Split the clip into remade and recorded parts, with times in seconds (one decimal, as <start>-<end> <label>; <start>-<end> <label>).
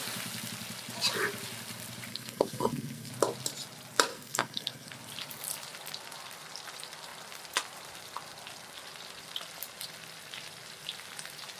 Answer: 0.0-2.1 recorded; 2.1-3.1 remade; 3.1-4.1 recorded; 4.1-4.9 remade; 4.9-11.6 recorded